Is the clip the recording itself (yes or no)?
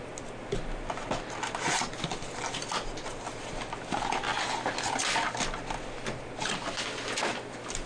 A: yes